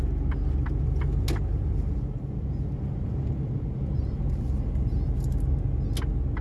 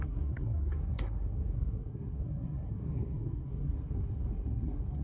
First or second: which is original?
first